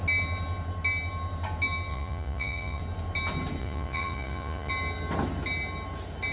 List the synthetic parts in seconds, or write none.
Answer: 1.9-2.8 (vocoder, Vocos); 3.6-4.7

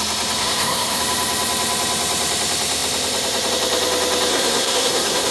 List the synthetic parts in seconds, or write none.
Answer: 0.4-1.0 (codec, SNAC); 4.3-5.3